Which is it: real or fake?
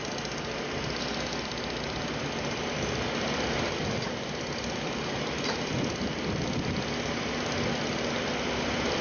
real